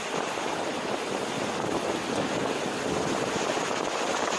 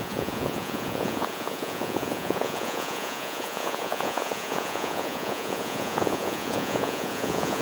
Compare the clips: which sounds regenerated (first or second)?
second